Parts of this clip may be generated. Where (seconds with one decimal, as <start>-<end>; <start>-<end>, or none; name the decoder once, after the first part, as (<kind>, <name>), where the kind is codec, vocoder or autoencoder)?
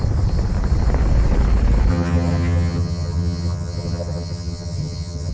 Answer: 1.9-5.3 (vocoder, HiFi-GAN)